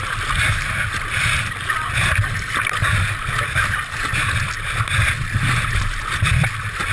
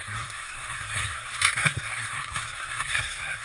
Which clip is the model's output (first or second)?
second